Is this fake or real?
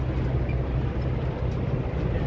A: real